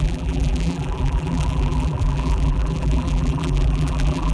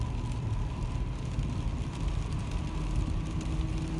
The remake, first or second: first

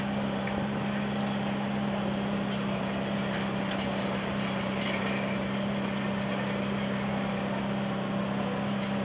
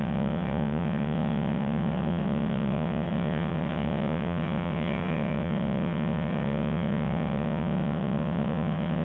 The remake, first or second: second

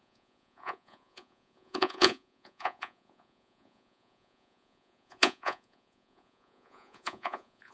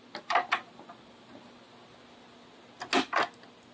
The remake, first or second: first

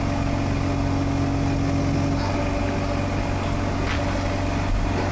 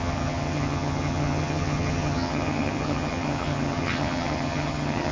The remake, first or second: second